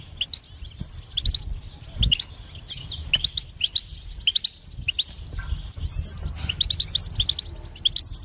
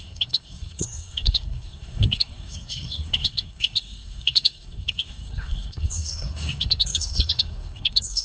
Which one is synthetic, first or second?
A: second